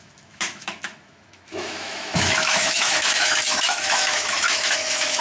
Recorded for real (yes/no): no